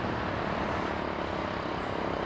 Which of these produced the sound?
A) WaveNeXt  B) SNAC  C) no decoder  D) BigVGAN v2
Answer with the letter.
C